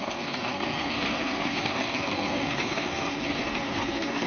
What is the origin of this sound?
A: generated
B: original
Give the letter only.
A